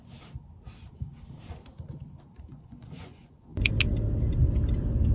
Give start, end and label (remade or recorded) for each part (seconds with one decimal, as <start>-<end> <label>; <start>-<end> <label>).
0.0-2.5 recorded; 2.5-3.7 remade; 3.7-5.1 recorded